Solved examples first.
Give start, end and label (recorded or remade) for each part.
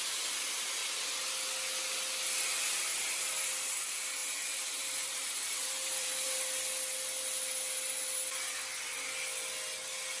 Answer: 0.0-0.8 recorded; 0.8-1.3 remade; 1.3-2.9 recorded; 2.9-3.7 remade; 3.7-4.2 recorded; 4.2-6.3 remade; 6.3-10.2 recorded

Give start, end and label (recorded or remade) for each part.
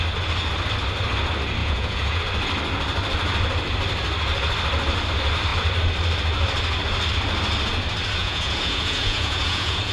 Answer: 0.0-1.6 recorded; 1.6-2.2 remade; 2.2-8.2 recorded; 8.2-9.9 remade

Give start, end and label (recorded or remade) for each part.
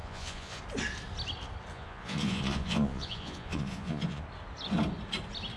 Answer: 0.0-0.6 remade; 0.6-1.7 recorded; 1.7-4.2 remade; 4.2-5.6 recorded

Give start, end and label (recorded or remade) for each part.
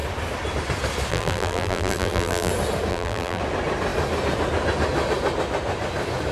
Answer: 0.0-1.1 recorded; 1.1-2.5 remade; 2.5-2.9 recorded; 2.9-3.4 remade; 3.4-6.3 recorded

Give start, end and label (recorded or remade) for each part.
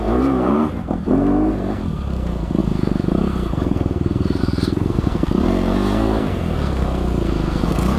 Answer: 0.0-8.0 remade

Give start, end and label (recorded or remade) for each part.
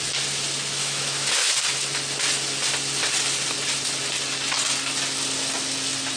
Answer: 0.0-0.8 recorded; 0.8-1.5 remade; 1.5-6.2 recorded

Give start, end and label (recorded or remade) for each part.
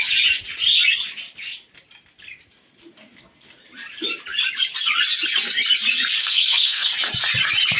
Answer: 0.0-6.2 recorded; 6.2-6.9 remade; 6.9-7.8 recorded